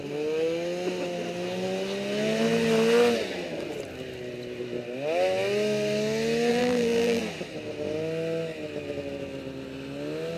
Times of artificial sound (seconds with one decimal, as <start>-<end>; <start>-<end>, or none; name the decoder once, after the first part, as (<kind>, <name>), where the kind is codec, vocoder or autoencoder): 6.5-7.2 (vocoder, BigVGAN v2)

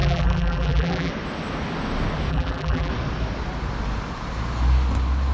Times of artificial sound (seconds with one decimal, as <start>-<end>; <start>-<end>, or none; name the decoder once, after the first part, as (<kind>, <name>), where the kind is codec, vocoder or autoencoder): 0.0-1.1 (vocoder, BigVGAN v2); 2.3-2.9

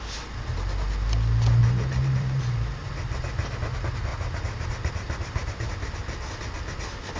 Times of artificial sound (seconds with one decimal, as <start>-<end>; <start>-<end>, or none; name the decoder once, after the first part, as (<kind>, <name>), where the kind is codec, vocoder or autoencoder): 1.6-2.4 (vocoder, BigVGAN v2); 2.8-3.6; 4.1-5.7

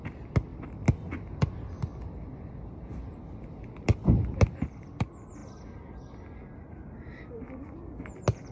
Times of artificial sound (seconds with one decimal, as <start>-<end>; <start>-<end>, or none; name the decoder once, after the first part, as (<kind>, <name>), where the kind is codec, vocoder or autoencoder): 1.9-3.3 (vocoder, BigVGAN v2)

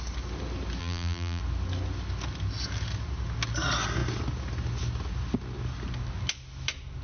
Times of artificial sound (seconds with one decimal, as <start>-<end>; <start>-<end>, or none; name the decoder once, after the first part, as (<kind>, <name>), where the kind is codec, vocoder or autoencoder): 0.8-1.4 (vocoder, BigVGAN v2)

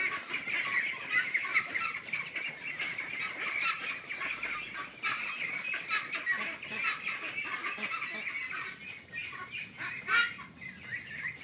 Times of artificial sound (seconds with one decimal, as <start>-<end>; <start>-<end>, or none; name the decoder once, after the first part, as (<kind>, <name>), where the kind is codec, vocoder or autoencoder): none

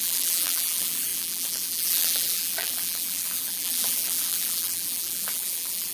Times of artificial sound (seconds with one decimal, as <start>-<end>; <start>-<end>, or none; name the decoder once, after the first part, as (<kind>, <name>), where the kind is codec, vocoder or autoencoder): 0.0-5.9 (vocoder, BigVGAN v2)

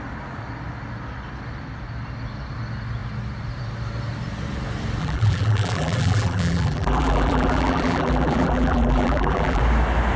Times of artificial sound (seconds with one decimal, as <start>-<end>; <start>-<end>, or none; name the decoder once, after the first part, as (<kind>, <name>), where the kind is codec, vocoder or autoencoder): 5.0-9.6 (vocoder, BigVGAN v2)